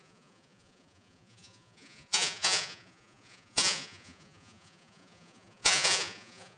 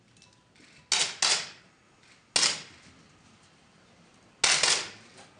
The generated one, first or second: first